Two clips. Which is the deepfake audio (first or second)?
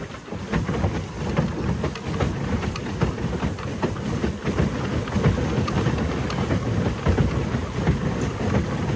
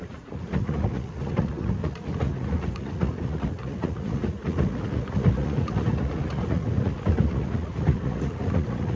second